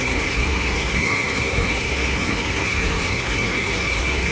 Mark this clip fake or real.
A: fake